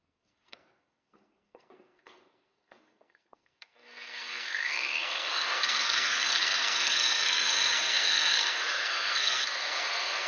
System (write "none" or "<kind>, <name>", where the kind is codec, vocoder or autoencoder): codec, SNAC